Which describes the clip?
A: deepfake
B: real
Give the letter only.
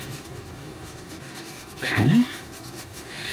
A